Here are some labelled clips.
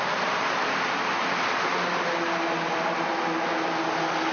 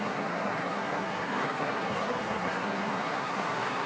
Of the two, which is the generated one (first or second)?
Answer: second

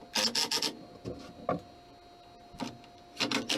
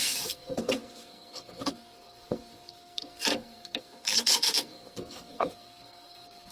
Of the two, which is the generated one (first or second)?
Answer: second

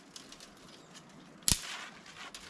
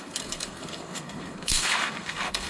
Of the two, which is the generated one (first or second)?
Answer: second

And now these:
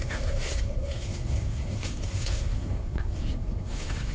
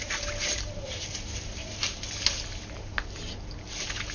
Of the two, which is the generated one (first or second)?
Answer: first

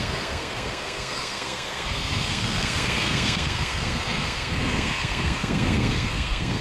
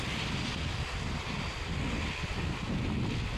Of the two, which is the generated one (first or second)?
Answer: first